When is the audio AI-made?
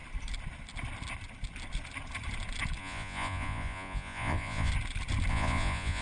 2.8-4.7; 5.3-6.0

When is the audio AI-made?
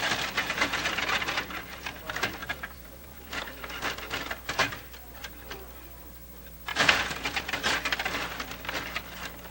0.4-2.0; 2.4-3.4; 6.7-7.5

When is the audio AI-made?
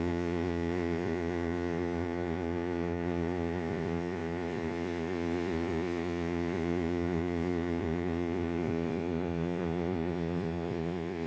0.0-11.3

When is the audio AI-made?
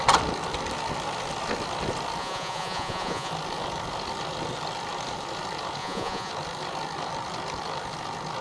2.2-3.3; 5.8-6.3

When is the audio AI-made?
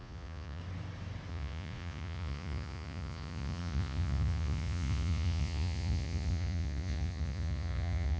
0.0-0.6; 1.3-8.2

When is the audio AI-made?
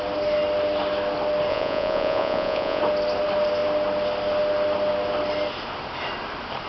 1.5-2.8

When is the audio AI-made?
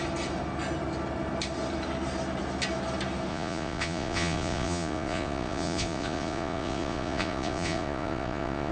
3.3-8.7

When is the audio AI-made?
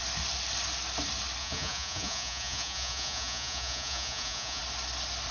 1.4-4.6